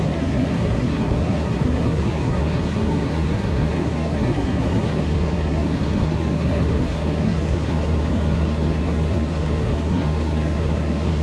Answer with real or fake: fake